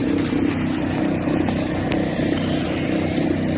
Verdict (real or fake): real